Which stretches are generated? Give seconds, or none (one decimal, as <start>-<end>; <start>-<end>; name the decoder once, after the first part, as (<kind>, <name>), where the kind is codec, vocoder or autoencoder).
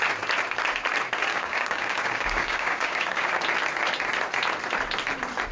1.3-3.3 (codec, DAC)